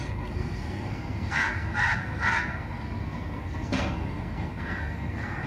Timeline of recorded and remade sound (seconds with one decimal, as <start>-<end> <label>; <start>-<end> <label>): 0.0-5.5 remade